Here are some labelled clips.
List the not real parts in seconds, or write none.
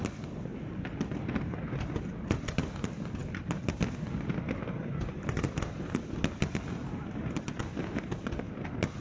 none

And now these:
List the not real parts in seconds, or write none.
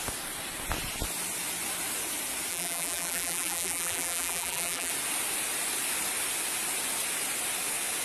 2.5-4.9 (vocoder, BigVGAN v2)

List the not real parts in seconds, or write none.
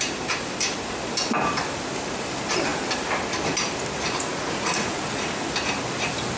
4.3-5.0 (vocoder, Vocos)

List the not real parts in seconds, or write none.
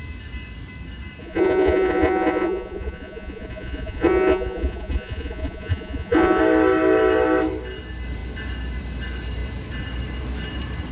1.2-6.4 (vocoder, Vocos)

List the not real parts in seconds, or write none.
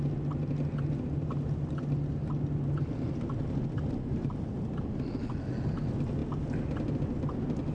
none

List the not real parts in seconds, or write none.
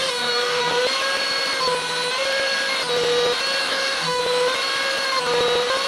0.0-0.7 (codec, DAC); 3.6-4.2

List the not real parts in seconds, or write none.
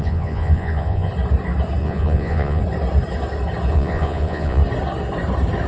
0.0-1.1 (vocoder, Vocos); 1.8-2.6; 3.7-4.6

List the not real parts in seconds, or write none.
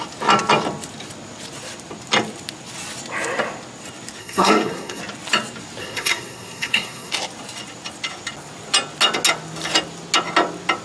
4.2-5.0 (codec, SNAC); 5.8-7.1